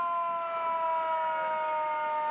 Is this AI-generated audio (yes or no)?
no